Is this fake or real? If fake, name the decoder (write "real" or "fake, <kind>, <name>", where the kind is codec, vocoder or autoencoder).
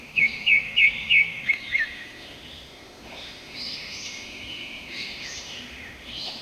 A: fake, autoencoder, DAC-VAE